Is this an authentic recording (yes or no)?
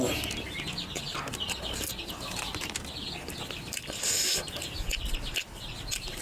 yes